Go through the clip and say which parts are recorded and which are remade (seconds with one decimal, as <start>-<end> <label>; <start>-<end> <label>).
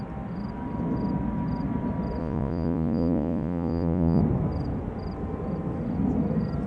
0.0-2.2 recorded; 2.2-4.2 remade; 4.2-6.7 recorded